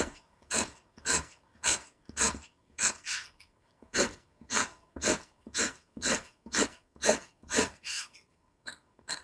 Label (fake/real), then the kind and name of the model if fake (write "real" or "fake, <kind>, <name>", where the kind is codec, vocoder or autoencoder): fake, codec, SNAC